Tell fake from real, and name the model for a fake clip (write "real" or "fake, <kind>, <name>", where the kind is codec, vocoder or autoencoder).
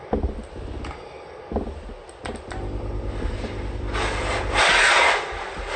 real